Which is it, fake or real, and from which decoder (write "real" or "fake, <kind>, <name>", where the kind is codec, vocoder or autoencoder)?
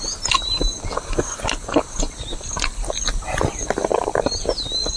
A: real